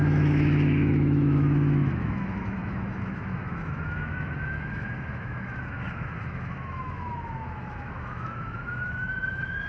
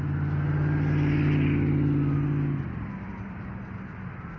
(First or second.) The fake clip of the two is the first